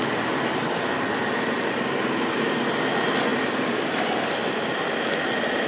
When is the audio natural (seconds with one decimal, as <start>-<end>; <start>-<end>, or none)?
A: 0.0-5.7